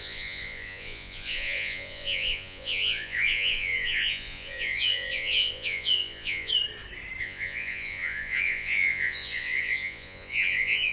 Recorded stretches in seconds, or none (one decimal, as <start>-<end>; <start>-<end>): 6.5-7.2

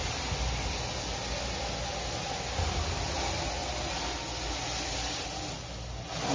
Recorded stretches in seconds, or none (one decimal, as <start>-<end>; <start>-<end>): 0.0-6.3